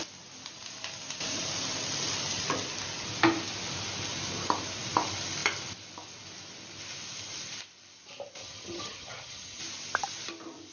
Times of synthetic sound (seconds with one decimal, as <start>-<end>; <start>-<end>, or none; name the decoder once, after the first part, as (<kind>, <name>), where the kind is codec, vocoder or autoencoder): 8.4-9.6 (vocoder, HiFi-GAN)